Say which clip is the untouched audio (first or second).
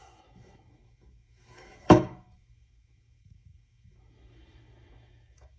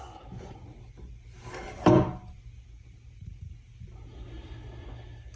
second